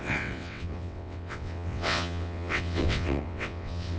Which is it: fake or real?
fake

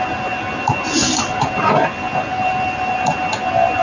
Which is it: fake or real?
real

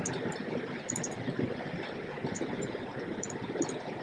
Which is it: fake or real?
real